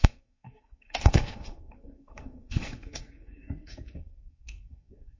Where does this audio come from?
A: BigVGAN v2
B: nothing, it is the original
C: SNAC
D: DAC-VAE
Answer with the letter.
C